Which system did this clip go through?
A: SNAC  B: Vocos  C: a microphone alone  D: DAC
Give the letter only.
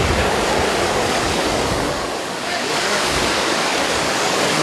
D